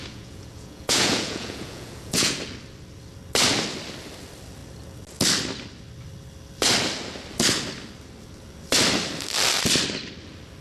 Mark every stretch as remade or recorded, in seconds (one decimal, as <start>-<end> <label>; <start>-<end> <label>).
0.0-2.3 remade; 2.3-10.6 recorded